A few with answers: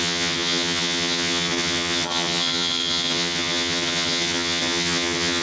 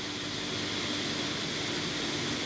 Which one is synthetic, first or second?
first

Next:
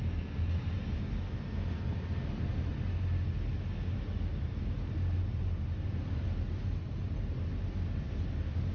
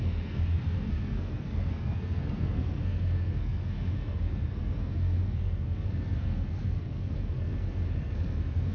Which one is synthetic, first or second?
second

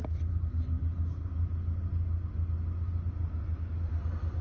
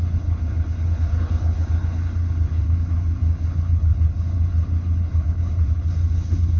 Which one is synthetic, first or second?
second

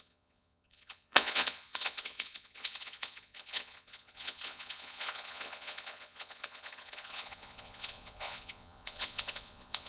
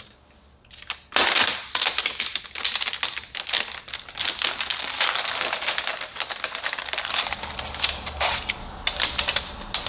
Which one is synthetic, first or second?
first